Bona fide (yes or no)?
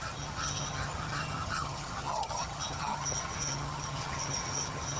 no